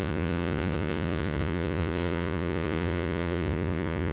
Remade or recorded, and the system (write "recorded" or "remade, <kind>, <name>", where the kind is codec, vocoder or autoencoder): remade, vocoder, Vocos